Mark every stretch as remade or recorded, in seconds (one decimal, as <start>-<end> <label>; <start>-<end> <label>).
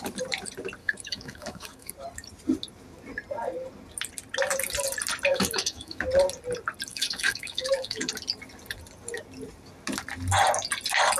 0.0-0.8 recorded; 0.8-1.9 remade; 1.9-5.3 recorded; 5.3-6.0 remade; 6.0-6.9 recorded; 6.9-8.1 remade; 8.1-11.2 recorded